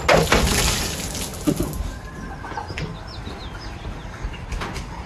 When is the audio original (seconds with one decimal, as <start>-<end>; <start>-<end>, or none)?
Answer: 0.0-5.1